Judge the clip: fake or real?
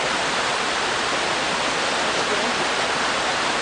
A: real